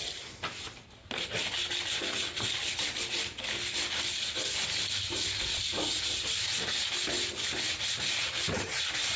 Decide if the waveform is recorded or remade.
recorded